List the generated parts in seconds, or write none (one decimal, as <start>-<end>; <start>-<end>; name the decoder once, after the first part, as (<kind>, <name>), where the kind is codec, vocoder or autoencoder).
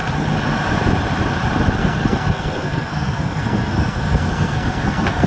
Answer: 1.8-5.3 (codec, SNAC)